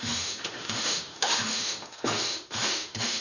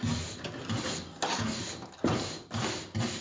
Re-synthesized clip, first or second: first